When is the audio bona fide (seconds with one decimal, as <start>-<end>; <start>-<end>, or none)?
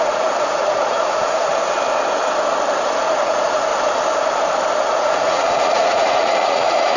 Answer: 1.5-3.0; 3.7-4.8